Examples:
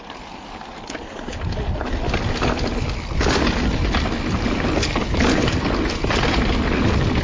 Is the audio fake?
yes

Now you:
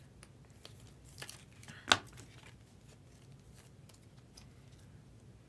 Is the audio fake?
no